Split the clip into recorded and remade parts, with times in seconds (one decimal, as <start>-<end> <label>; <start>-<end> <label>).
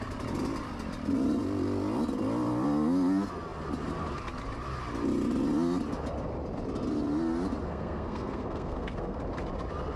0.0-7.6 recorded; 7.6-9.2 remade; 9.2-10.0 recorded